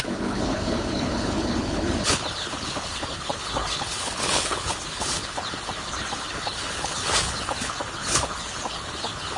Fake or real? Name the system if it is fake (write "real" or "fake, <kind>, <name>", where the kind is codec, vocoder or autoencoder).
fake, codec, HILCodec